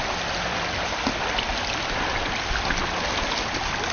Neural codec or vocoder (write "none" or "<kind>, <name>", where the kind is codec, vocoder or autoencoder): none